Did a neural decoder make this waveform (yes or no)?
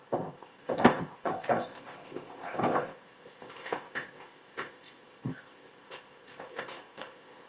yes